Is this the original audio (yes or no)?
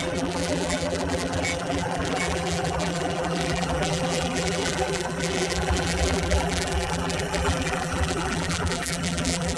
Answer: no